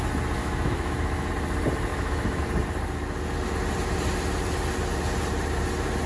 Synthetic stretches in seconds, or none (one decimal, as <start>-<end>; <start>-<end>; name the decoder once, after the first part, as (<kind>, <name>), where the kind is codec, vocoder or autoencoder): 0.4-1.3 (autoencoder, DAC-VAE); 1.9-2.4